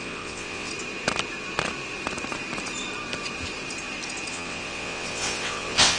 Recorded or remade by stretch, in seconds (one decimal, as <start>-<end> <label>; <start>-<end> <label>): 0.0-0.7 remade; 0.7-4.3 recorded; 4.3-6.0 remade